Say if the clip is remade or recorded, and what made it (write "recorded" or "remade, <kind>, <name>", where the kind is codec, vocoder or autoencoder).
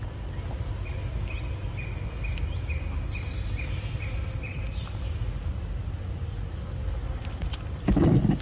recorded